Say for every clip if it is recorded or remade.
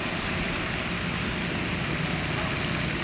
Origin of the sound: recorded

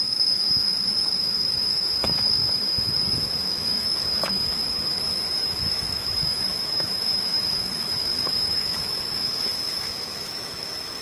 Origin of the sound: remade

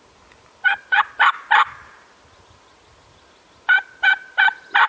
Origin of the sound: recorded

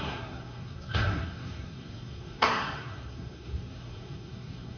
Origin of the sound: remade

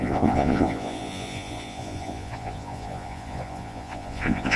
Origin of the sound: remade